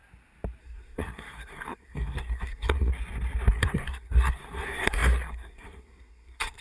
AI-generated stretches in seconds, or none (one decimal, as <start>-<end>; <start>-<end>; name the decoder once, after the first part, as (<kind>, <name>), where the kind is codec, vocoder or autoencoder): 0.6-2.9 (codec, SNAC); 3.5-6.6